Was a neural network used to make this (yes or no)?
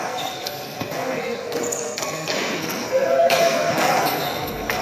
yes